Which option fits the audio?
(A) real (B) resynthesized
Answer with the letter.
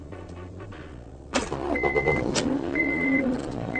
B